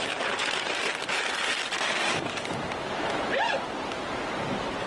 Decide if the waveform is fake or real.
real